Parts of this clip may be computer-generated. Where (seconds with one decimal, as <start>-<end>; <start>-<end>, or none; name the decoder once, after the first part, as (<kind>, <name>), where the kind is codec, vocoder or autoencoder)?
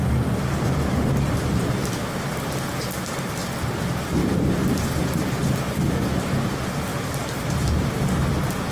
4.2-5.7 (vocoder, BigVGAN v2); 6.9-8.0